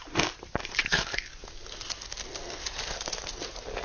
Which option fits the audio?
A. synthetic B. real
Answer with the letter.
B